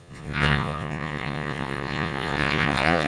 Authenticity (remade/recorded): remade